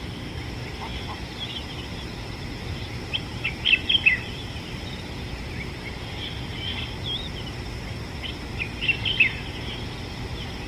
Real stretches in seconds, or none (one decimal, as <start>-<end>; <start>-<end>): 0.0-10.7